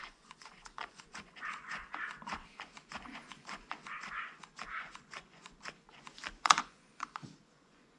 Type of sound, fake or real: fake